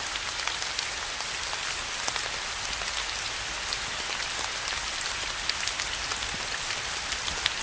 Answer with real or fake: real